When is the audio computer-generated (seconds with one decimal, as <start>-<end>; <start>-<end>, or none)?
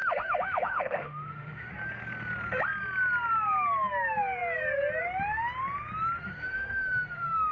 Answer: 0.0-1.7; 6.2-7.5